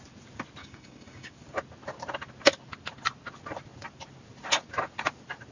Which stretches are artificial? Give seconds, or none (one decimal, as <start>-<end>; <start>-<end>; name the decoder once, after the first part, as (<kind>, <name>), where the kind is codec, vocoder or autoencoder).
0.6-1.3 (codec, DAC)